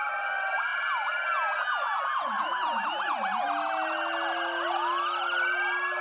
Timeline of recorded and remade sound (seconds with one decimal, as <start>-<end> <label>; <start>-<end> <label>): 0.0-6.0 recorded